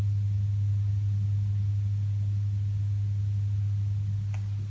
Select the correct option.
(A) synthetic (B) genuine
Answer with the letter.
B